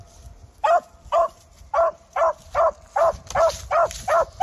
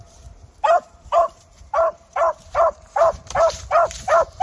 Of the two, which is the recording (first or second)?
first